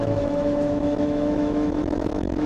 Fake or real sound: fake